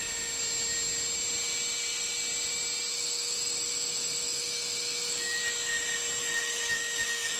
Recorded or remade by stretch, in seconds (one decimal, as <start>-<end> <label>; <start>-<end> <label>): 0.0-2.9 recorded; 2.9-5.4 remade; 5.4-6.2 recorded; 6.2-7.4 remade